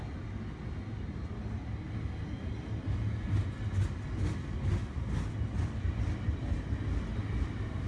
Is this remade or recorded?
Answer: recorded